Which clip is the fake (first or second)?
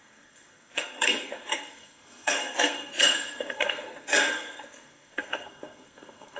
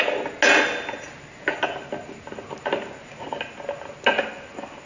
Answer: first